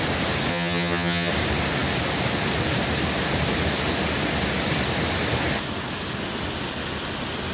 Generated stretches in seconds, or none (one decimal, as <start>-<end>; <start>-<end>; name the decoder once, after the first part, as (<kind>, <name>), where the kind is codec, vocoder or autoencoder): 0.5-1.3 (vocoder, HiFi-GAN)